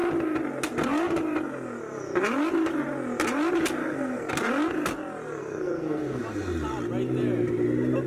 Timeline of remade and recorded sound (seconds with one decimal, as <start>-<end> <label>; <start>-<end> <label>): 0.0-3.8 recorded; 3.8-4.3 remade; 4.3-5.4 recorded; 5.4-6.2 remade; 6.2-8.1 recorded

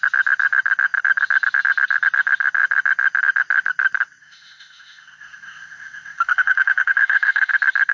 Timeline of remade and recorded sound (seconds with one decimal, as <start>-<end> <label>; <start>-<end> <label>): 0.0-4.2 recorded; 4.2-7.5 remade; 7.5-7.9 recorded

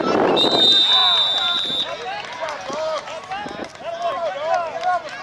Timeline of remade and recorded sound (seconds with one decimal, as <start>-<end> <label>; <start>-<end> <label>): 0.0-5.2 recorded

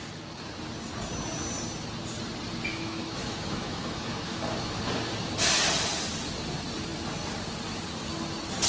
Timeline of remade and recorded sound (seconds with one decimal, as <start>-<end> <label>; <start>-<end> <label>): 0.0-2.7 recorded; 2.7-4.8 remade; 4.8-8.7 recorded

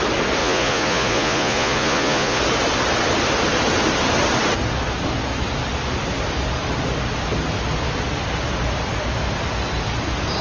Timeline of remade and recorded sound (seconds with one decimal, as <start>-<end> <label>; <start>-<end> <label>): 0.0-0.4 recorded; 0.4-2.4 remade; 2.4-10.4 recorded

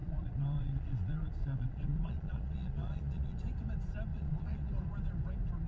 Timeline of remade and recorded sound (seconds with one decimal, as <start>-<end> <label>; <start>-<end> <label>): 0.0-3.4 remade; 3.4-4.1 recorded; 4.1-4.7 remade; 4.7-5.7 recorded